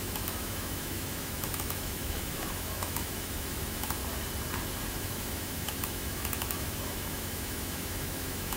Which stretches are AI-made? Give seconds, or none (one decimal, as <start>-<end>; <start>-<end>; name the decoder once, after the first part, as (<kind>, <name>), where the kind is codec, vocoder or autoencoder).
0.0-4.0 (autoencoder, DAC-VAE); 5.0-8.6